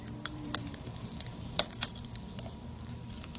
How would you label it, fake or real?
fake